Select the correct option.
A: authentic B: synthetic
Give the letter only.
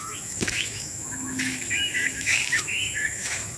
B